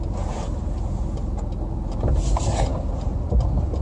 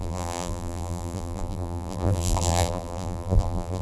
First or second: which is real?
first